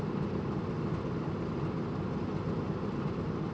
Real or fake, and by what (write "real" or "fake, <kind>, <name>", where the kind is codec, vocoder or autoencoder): real